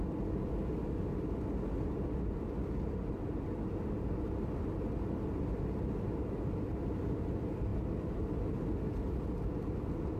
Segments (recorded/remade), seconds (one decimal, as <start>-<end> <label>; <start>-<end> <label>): 0.0-10.2 recorded